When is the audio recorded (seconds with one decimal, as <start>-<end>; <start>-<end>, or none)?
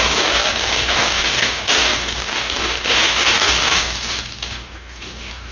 none